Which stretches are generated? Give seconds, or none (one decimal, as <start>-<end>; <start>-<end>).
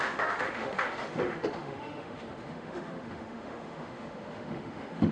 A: 0.0-5.1